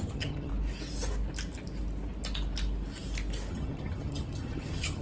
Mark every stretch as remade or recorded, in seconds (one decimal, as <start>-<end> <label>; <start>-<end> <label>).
0.0-0.5 remade; 0.5-3.5 recorded; 3.5-5.0 remade